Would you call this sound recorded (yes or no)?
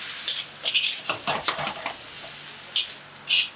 yes